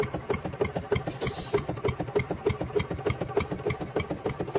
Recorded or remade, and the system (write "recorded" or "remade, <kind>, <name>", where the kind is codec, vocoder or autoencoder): recorded